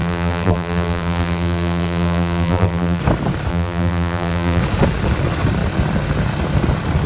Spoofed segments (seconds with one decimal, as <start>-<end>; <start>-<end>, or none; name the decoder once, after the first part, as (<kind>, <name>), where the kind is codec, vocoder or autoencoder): 0.0-3.0 (vocoder, BigVGAN v2); 3.5-4.6